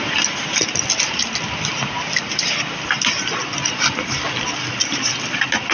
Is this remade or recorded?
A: recorded